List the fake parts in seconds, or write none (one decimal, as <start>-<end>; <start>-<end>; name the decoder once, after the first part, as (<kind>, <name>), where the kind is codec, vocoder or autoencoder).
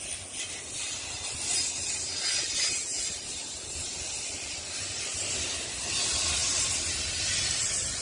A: 2.4-4.3 (vocoder, BigVGAN v2)